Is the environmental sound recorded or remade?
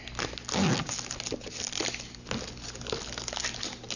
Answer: recorded